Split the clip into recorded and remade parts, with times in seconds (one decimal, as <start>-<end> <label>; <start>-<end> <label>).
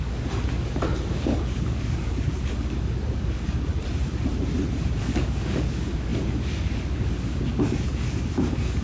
0.0-3.7 remade; 3.7-5.0 recorded; 5.0-8.8 remade